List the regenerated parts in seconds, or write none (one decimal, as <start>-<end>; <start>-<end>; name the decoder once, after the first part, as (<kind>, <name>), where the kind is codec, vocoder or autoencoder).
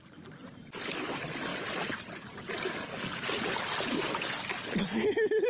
none